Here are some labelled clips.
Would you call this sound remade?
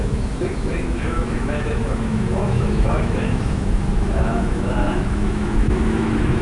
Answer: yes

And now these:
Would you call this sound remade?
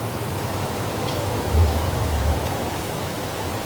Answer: yes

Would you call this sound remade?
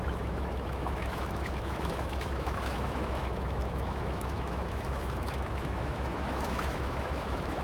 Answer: yes